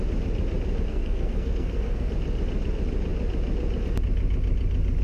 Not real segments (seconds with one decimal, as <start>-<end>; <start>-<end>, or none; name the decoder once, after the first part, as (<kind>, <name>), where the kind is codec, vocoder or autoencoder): 0.9-2.1 (codec, SNAC)